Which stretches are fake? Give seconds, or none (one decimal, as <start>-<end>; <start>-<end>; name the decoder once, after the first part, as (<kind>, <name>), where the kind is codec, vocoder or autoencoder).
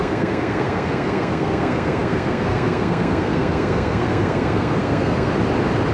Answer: 0.0-5.3 (codec, SNAC)